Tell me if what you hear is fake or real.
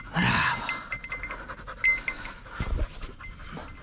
real